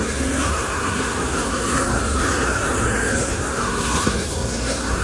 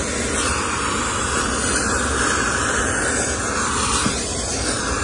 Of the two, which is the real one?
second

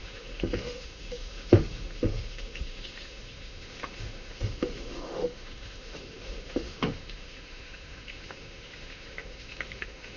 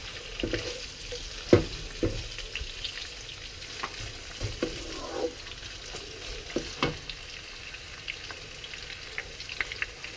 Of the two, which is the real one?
second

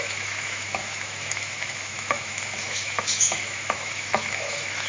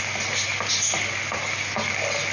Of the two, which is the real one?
second